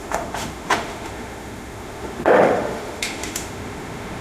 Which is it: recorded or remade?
remade